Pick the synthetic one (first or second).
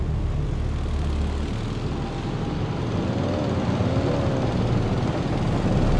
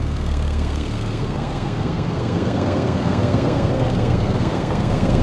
second